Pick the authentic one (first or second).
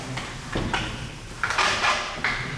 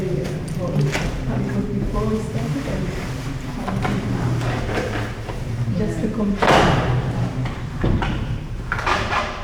first